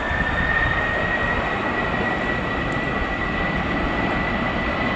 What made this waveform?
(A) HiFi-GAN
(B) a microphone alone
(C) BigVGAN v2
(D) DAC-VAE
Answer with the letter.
B